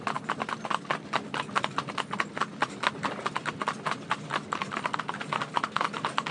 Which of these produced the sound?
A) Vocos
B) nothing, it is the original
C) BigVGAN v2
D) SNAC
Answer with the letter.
B